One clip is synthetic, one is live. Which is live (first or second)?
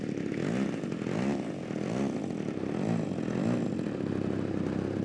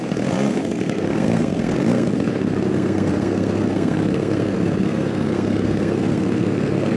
first